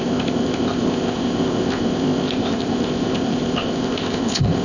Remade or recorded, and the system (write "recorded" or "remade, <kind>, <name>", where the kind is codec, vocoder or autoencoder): remade, codec, ZipCodec